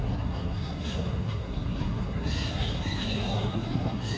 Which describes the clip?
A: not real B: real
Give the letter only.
A